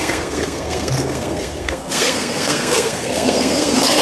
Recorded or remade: remade